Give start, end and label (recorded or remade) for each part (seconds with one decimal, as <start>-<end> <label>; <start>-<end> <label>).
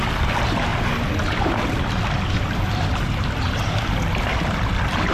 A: 0.0-5.1 recorded